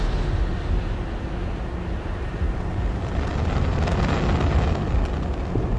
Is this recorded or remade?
recorded